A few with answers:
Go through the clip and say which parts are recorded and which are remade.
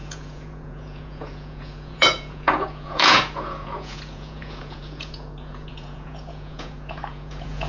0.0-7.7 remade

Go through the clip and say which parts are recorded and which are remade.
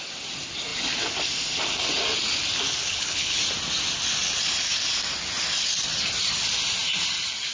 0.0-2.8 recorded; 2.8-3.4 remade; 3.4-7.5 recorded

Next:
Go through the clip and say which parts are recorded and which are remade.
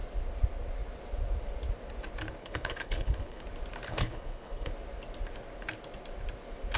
0.0-2.4 recorded; 2.4-3.4 remade; 3.4-3.9 recorded; 3.9-4.7 remade; 4.7-6.8 recorded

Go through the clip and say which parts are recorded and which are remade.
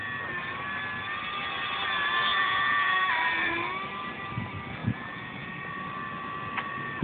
0.0-2.3 recorded; 2.3-3.1 remade; 3.1-4.8 recorded; 4.8-5.5 remade; 5.5-7.0 recorded